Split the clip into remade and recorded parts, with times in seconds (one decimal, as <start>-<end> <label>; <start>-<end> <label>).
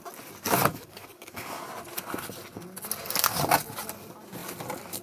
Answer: 0.0-0.7 recorded; 0.7-1.7 remade; 1.7-5.0 recorded